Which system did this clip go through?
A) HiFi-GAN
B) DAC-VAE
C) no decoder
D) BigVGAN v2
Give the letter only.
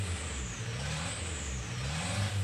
D